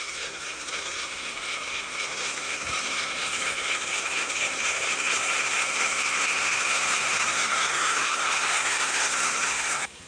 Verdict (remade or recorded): remade